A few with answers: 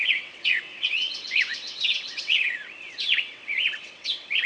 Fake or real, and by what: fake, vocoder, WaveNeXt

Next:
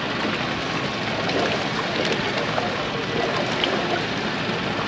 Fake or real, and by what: real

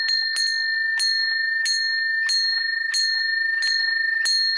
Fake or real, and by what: real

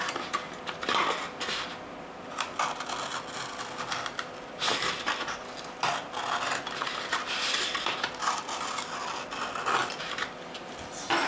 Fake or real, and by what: real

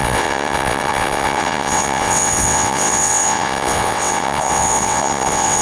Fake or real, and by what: fake, vocoder, WaveNeXt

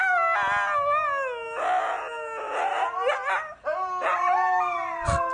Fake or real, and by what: real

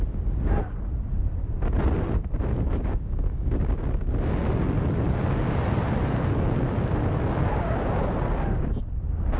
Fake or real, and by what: real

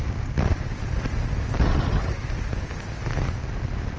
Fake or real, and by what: real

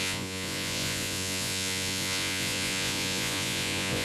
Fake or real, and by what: fake, vocoder, Vocos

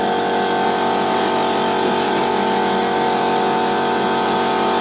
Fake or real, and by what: real